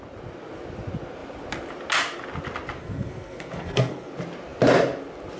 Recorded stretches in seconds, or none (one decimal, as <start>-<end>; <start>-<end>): 0.0-2.8; 4.1-5.4